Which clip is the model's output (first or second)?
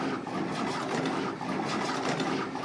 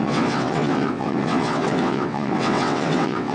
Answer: second